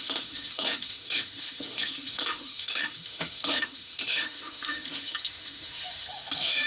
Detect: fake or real fake